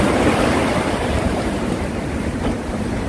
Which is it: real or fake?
real